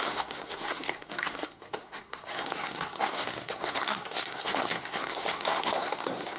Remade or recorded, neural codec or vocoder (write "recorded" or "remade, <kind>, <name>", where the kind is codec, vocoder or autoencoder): remade, codec, SNAC